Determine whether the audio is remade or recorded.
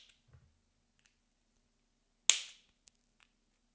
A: recorded